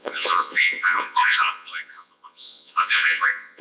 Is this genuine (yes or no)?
no